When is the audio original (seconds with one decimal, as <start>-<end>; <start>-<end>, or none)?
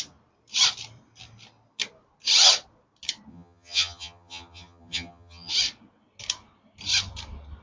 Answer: 0.0-3.3; 5.5-7.6